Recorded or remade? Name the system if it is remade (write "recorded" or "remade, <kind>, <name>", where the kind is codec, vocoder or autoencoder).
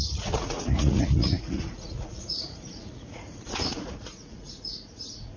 remade, vocoder, Vocos